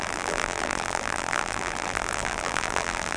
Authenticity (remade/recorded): remade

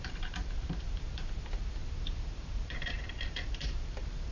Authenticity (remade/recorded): remade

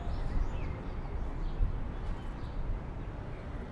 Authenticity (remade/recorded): recorded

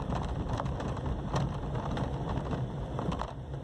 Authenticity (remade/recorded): remade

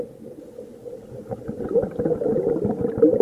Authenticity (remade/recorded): recorded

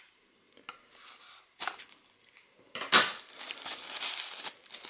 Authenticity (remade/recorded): recorded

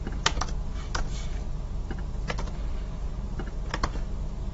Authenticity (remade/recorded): recorded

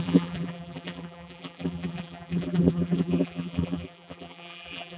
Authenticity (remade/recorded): remade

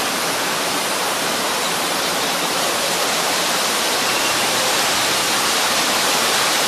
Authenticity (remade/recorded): remade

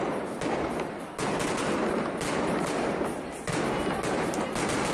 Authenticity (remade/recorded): recorded